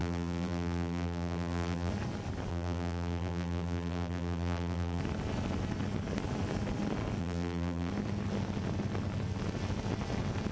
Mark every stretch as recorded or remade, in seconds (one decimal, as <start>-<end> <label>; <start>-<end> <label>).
0.0-1.9 remade; 1.9-2.5 recorded; 2.5-5.0 remade; 5.0-7.2 recorded; 7.2-7.9 remade; 7.9-10.5 recorded